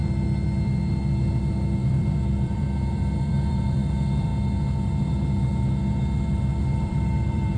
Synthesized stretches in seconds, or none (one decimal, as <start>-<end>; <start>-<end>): 1.4-4.3; 6.6-7.6